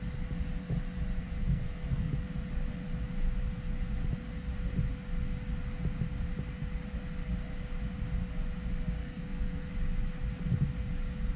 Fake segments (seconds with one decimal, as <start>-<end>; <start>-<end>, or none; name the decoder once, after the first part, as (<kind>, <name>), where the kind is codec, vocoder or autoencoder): 1.2-2.1 (codec, SNAC); 9.0-9.7